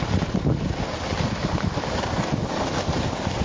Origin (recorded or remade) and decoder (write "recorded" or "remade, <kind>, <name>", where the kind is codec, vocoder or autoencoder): recorded